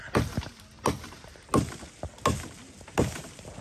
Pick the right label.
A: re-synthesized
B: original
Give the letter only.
B